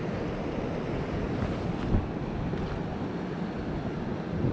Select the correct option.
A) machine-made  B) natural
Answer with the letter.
B